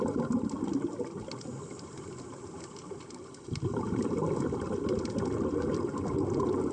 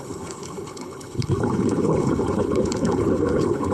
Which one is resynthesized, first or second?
second